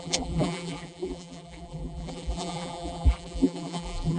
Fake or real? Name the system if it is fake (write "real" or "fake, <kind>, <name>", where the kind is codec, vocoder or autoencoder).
fake, vocoder, BigVGAN v2